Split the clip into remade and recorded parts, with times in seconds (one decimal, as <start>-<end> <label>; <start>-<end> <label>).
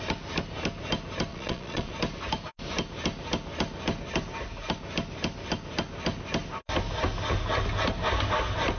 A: 0.0-1.3 recorded; 1.3-1.9 remade; 1.9-8.8 recorded